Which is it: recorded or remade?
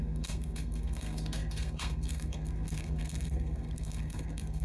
remade